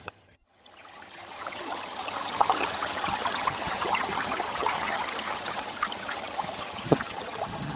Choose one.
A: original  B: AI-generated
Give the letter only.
B